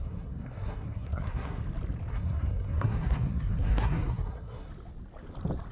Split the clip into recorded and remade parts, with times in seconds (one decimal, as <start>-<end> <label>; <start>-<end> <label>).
0.0-1.6 remade; 1.6-2.1 recorded; 2.1-4.7 remade; 4.7-5.7 recorded